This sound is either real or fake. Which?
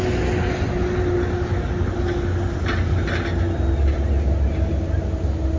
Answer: real